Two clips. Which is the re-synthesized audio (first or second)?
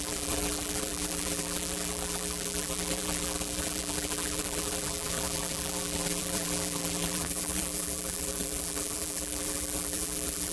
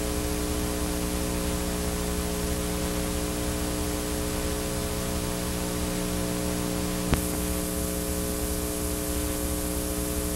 first